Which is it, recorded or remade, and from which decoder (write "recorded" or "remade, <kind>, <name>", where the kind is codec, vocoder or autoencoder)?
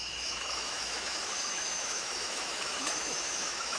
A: remade, autoencoder, DAC-VAE